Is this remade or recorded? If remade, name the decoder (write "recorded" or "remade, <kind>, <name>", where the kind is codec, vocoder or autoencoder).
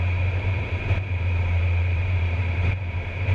remade, vocoder, BigVGAN v2